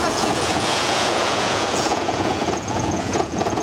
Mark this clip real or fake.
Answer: fake